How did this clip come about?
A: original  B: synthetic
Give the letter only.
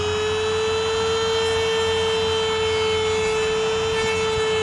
A